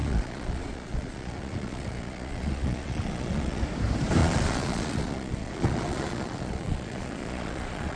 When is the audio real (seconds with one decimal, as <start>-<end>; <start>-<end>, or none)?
3.6-4.2